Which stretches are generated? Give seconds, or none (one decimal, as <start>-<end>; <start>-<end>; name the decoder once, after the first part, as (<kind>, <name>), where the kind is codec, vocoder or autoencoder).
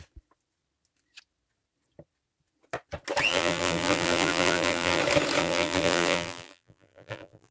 3.3-5.0 (vocoder, BigVGAN v2); 5.4-7.5